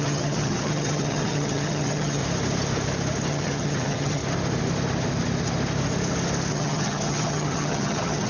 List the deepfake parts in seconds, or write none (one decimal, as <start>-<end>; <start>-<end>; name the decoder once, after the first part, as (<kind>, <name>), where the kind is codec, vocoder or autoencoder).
0.0-2.2 (vocoder, HiFi-GAN); 3.3-4.2; 6.5-8.3